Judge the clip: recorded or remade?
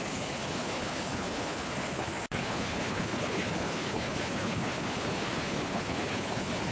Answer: remade